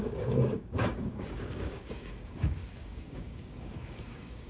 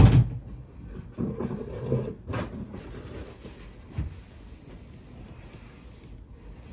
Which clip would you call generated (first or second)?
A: first